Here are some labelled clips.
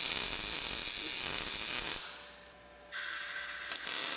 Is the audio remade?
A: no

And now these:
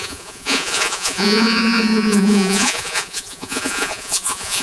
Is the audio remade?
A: yes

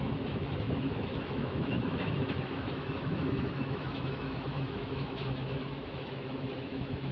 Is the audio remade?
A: yes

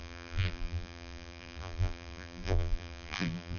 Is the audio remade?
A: yes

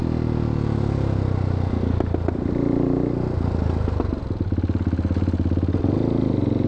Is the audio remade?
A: no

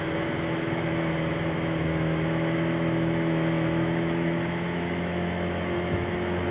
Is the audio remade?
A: yes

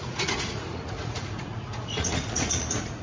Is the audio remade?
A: yes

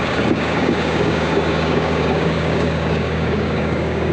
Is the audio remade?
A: yes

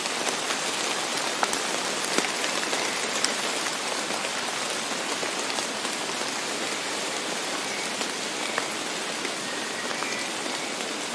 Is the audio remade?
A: no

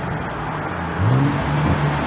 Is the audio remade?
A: no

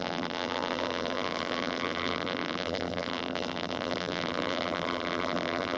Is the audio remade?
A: yes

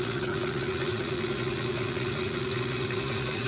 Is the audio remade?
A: yes